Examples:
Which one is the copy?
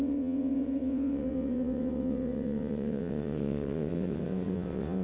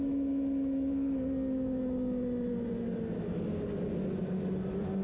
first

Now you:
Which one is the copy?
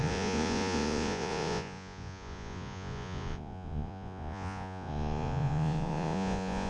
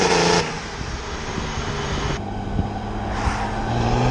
first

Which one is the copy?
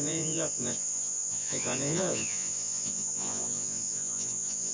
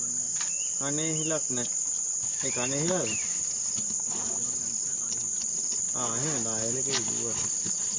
first